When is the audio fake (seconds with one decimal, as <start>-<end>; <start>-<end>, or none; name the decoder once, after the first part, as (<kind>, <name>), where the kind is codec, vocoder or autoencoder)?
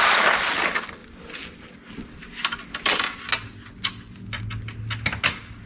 none